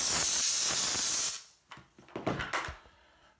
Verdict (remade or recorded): recorded